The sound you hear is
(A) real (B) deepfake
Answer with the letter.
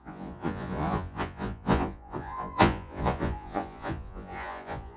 B